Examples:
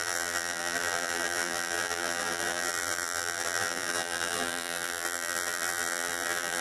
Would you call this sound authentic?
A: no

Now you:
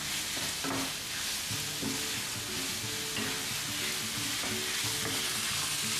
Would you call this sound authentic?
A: yes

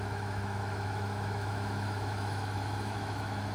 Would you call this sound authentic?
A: no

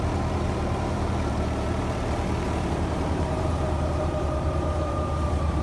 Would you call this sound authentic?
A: no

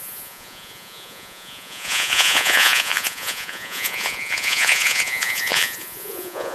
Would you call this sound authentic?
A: no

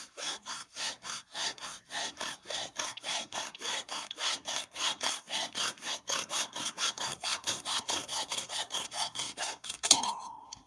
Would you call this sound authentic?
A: no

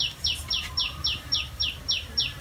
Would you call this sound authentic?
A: yes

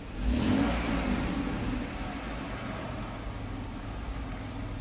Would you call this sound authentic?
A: yes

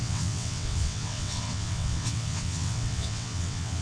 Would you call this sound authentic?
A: no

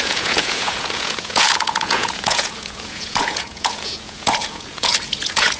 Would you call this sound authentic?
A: no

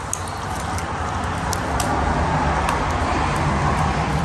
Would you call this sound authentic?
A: yes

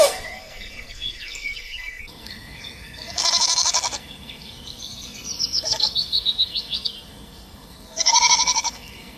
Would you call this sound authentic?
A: no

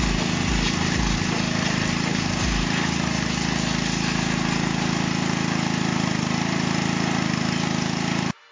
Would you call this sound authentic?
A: yes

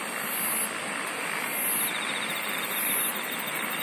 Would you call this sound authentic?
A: yes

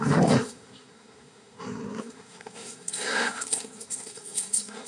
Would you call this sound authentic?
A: no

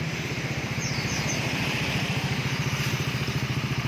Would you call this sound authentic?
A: no